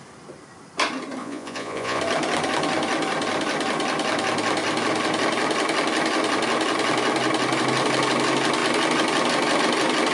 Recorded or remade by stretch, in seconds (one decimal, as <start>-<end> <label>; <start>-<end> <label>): 0.0-1.2 recorded; 1.2-2.0 remade; 2.0-10.1 recorded